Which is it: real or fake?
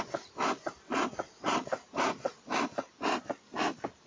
real